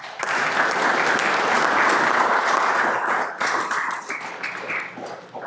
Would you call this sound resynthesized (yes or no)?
no